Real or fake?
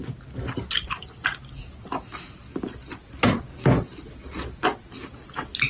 real